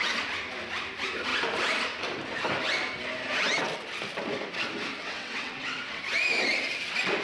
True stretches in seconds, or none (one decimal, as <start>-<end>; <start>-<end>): 0.0-5.0; 6.0-7.2